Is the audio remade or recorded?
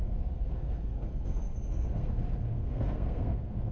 remade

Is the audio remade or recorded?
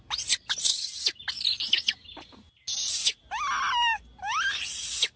recorded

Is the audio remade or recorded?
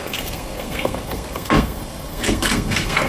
remade